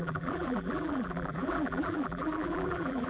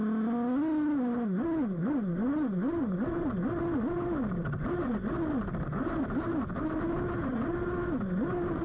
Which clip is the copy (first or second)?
first